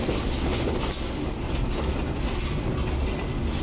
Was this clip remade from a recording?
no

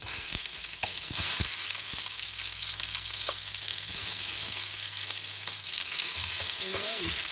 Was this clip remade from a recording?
yes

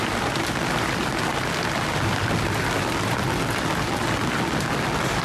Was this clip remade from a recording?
no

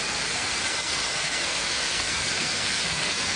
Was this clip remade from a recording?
yes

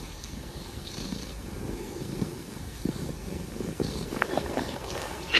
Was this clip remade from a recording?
yes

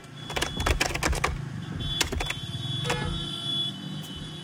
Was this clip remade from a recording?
no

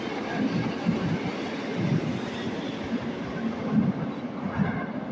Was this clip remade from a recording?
no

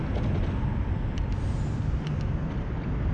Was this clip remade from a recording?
no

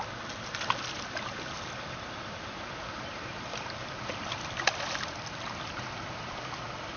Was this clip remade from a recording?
no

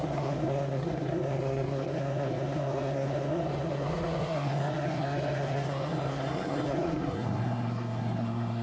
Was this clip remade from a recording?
yes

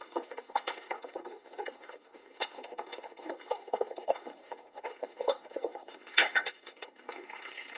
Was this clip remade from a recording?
yes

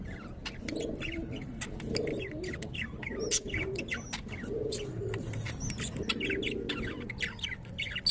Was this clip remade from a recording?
no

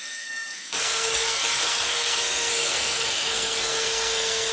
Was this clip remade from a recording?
yes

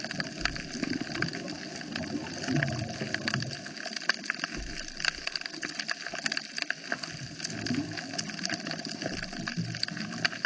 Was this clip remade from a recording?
no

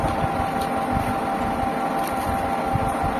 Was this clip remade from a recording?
no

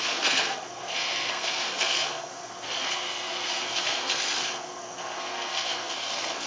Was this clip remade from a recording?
yes